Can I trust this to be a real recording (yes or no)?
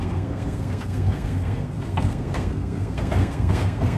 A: no